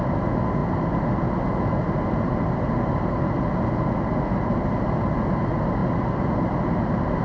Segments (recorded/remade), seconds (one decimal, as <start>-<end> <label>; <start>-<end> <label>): 0.0-7.2 recorded